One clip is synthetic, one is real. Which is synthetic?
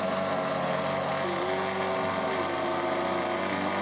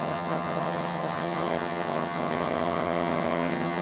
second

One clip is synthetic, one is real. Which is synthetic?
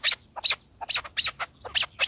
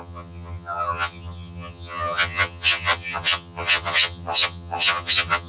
second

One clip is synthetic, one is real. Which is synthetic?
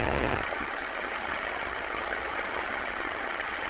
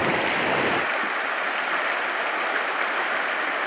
first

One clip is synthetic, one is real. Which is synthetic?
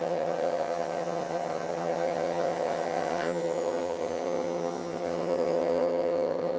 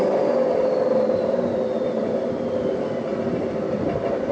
first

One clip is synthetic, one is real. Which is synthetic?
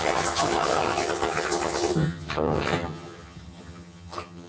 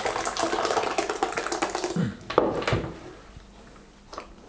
first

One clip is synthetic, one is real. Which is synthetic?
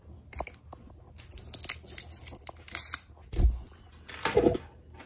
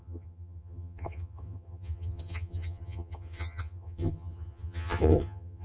second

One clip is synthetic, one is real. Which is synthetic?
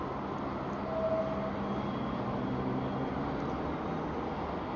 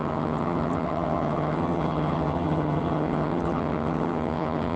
second